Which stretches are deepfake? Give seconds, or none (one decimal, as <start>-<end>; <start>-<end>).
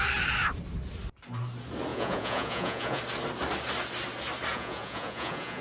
1.9-3.0; 4.5-5.6